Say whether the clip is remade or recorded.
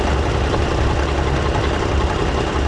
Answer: recorded